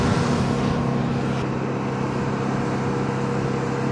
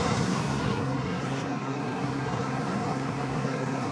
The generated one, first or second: second